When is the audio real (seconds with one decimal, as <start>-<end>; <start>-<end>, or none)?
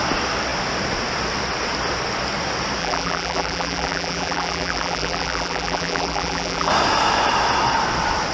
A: 0.0-2.8; 6.7-8.3